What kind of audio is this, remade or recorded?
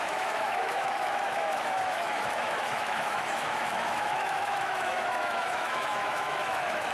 remade